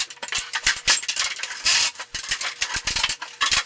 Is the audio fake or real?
real